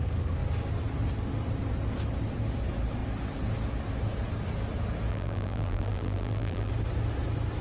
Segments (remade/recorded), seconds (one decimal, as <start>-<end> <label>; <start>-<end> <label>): 0.0-5.1 recorded; 5.1-6.7 remade; 6.7-7.6 recorded